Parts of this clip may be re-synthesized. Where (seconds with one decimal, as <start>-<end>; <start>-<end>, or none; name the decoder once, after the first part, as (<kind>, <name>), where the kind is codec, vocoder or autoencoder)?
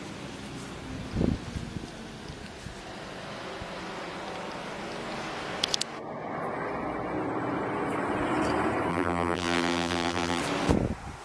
8.9-10.4 (vocoder, BigVGAN v2)